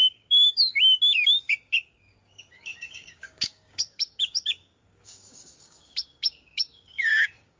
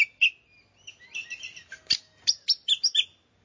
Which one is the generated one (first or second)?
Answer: first